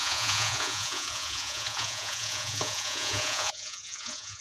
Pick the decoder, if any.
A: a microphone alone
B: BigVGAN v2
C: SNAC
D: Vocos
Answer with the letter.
D